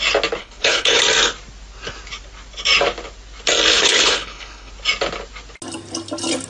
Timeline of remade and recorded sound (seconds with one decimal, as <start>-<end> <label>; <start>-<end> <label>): 0.0-0.4 recorded; 0.4-1.0 remade; 1.0-3.7 recorded; 3.7-4.7 remade; 4.7-6.5 recorded